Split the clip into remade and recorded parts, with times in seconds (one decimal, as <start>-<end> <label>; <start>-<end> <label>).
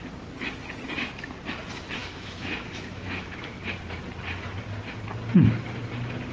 0.0-2.0 recorded; 2.0-3.5 remade; 3.5-6.3 recorded